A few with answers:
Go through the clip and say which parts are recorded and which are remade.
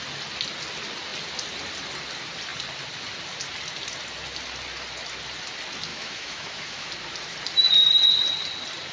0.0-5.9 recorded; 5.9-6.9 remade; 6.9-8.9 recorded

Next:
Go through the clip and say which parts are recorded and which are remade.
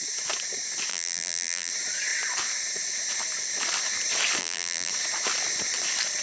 0.0-0.9 recorded; 0.9-1.7 remade; 1.7-4.4 recorded; 4.4-4.9 remade; 4.9-6.2 recorded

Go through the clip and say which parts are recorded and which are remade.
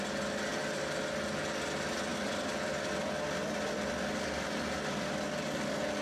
0.0-0.5 recorded; 0.5-1.0 remade; 1.0-2.1 recorded; 2.1-5.2 remade; 5.2-6.0 recorded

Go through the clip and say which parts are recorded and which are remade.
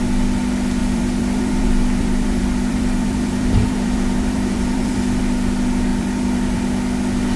0.0-0.8 recorded; 0.8-5.2 remade; 5.2-5.9 recorded; 5.9-6.6 remade; 6.6-7.4 recorded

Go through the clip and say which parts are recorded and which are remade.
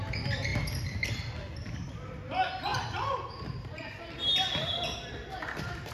0.0-5.9 recorded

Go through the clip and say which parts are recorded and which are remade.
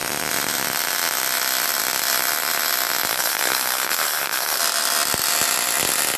0.0-3.1 recorded; 3.1-4.6 remade; 4.6-6.2 recorded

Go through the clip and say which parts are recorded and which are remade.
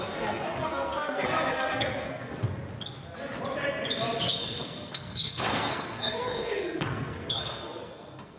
0.0-2.4 remade; 2.4-4.4 recorded; 4.4-8.4 remade